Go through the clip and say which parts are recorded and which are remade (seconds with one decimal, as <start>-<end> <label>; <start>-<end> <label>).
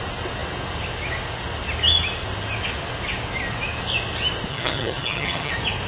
0.0-4.5 recorded; 4.5-5.5 remade; 5.5-5.9 recorded